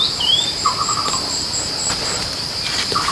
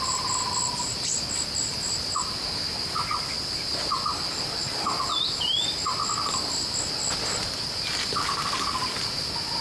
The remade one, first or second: first